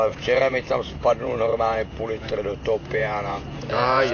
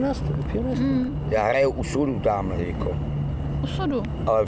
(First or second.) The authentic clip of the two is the second